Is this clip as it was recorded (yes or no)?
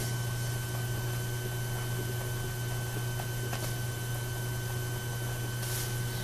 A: yes